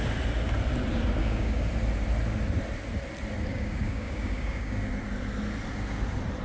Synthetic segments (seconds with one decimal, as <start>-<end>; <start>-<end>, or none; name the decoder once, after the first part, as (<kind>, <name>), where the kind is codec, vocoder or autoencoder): 1.2-1.7 (codec, DAC); 3.5-4.9